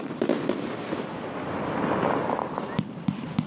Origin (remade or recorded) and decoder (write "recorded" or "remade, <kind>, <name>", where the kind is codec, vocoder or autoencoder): remade, vocoder, BigVGAN v2